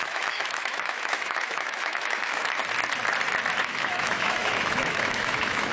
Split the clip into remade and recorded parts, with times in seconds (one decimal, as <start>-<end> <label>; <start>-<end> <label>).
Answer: 0.0-2.6 remade; 2.6-3.6 recorded; 3.6-5.7 remade